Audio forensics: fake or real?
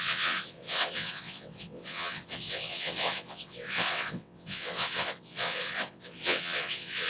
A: fake